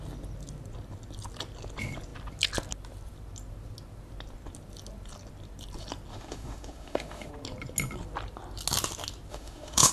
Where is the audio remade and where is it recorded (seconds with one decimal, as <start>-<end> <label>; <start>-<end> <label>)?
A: 0.0-6.1 recorded; 6.1-7.3 remade; 7.3-9.3 recorded; 9.3-9.9 remade